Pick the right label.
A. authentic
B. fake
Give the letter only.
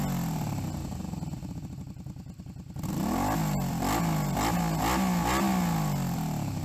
A